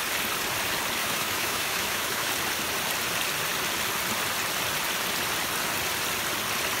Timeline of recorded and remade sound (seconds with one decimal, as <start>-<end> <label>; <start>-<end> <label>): 0.0-1.0 recorded; 1.0-2.3 remade; 2.3-6.8 recorded